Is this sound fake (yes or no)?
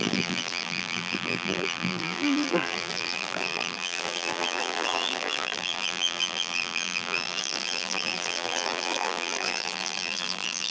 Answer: yes